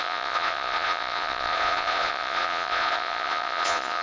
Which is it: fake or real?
fake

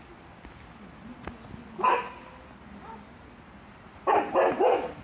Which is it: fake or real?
real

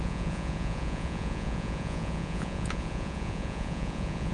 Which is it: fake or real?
fake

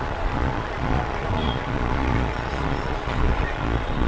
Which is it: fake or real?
fake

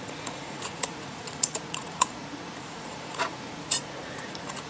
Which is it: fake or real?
fake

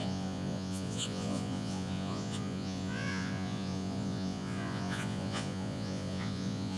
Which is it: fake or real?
fake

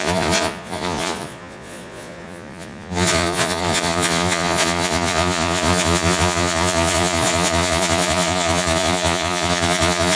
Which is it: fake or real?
fake